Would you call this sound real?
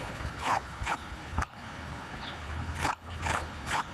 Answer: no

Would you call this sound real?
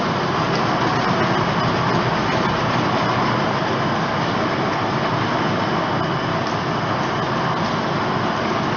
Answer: yes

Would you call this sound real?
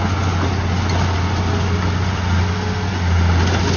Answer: yes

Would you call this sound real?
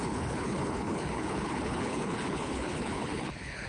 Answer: no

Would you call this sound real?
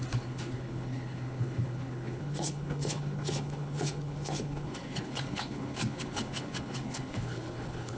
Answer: no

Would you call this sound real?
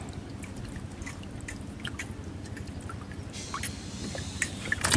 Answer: yes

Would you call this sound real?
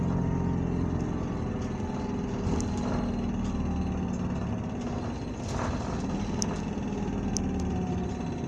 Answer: yes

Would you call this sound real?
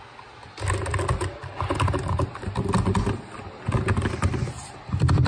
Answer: yes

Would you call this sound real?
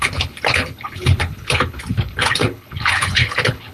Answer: no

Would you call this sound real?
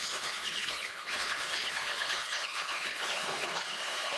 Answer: no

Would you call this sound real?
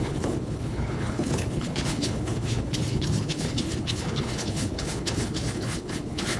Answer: no